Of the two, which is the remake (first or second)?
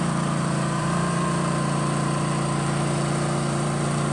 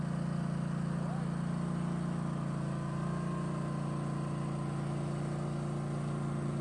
first